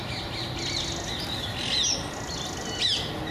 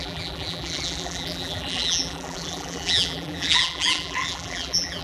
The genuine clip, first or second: first